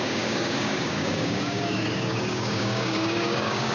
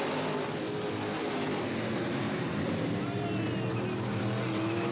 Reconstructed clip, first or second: first